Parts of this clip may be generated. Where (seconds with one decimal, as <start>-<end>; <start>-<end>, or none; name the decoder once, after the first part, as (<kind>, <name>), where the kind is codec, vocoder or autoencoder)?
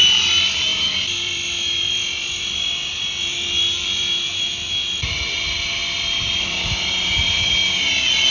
0.7-2.9 (vocoder, BigVGAN v2); 5.8-7.5